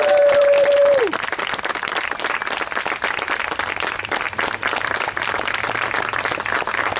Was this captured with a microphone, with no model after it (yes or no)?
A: no